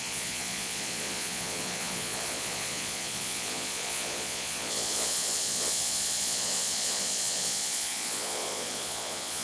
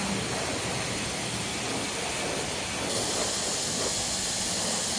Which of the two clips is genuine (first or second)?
second